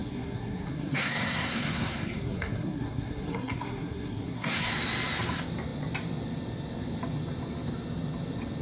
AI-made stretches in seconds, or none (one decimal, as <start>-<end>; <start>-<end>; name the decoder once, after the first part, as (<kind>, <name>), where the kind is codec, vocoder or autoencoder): 0.0-4.7 (codec, SNAC)

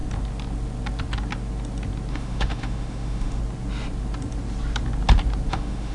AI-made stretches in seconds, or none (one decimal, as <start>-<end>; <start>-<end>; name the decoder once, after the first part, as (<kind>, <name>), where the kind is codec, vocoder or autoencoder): 2.1-3.4 (autoencoder, DAC-VAE); 5.5-5.9

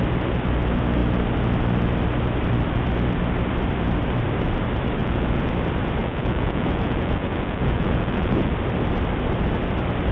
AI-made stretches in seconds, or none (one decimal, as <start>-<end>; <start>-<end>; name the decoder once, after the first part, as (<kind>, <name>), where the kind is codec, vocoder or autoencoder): 5.0-5.5 (vocoder, Vocos); 6.0-8.5

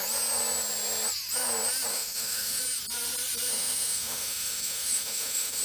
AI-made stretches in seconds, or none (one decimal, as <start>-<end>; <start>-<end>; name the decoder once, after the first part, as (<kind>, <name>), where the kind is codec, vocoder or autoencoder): 1.9-2.6 (autoencoder, DAC-VAE); 3.5-5.6